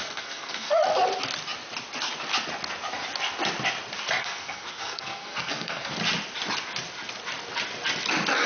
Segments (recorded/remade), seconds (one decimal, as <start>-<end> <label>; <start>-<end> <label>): 0.0-0.7 remade; 0.7-4.2 recorded; 4.2-5.9 remade; 5.9-8.5 recorded